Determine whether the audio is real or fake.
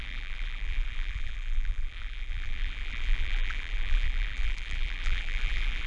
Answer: fake